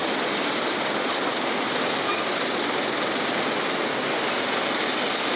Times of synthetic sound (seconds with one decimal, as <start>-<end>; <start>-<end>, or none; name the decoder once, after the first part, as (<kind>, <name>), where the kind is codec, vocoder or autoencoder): none